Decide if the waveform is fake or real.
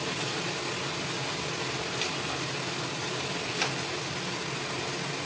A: real